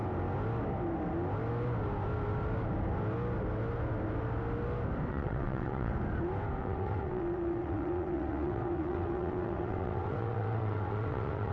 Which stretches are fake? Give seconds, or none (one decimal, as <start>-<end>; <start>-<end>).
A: 5.1-5.9; 6.6-11.5